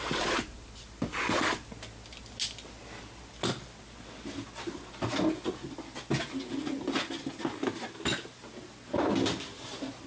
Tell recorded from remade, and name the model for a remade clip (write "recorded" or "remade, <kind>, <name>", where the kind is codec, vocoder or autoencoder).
recorded